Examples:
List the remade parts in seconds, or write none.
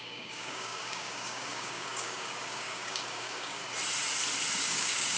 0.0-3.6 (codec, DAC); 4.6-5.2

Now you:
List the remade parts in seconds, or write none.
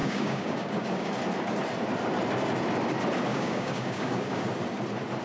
0.0-1.1 (codec, DAC); 3.3-4.4